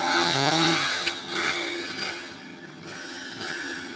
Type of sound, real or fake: fake